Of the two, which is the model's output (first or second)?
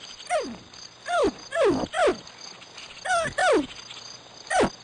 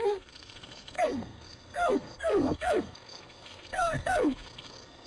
second